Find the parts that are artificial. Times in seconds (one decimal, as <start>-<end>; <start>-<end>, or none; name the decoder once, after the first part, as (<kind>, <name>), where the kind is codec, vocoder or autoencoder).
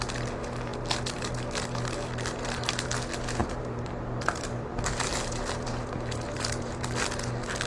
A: 3.4-6.8 (vocoder, BigVGAN v2)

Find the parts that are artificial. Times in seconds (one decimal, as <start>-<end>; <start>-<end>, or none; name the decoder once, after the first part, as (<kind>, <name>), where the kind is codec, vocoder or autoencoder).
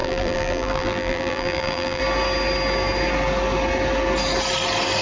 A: 0.0-2.0 (vocoder, BigVGAN v2)